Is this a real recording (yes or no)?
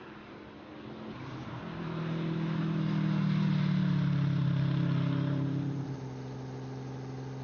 yes